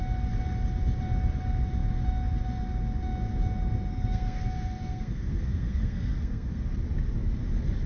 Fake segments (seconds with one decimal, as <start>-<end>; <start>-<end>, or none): 3.9-6.6